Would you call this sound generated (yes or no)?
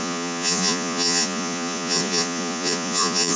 yes